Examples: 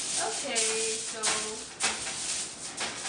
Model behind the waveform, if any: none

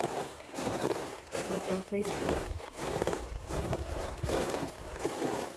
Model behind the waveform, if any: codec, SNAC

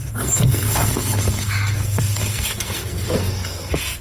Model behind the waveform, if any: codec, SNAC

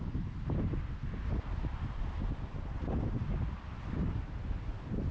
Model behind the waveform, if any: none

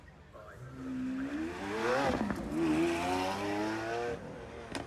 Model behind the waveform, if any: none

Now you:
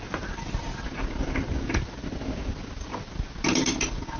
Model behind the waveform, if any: none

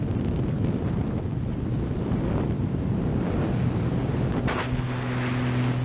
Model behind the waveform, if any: none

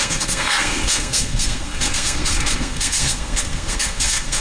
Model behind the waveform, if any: codec, SNAC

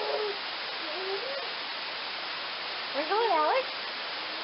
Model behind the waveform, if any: none